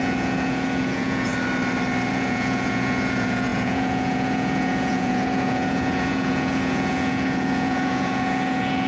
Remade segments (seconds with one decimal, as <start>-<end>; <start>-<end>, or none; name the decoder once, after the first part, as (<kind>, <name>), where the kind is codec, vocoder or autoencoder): 0.0-1.3 (vocoder, Vocos); 2.1-8.9